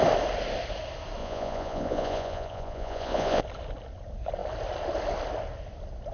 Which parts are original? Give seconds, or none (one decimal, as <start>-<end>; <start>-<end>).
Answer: 0.0-1.2; 3.4-6.1